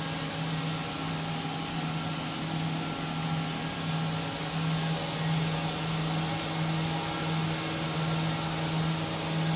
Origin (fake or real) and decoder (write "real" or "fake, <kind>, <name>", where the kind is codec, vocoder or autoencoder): real